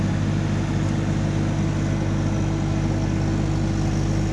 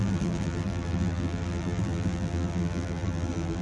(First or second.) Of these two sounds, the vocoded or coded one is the second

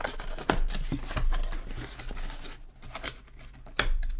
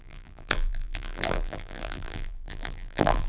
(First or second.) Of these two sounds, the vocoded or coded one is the second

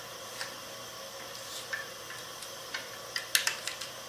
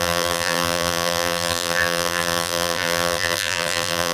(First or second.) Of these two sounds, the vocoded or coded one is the second